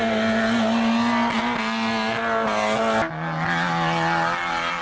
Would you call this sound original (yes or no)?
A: yes